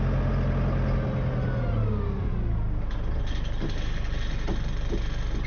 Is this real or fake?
real